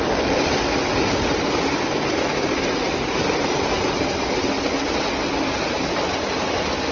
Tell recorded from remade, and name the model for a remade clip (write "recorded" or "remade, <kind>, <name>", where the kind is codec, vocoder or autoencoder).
recorded